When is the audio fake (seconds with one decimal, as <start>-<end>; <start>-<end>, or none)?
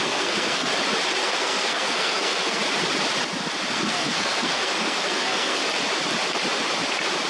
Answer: 0.0-0.7; 1.2-2.6; 3.7-5.6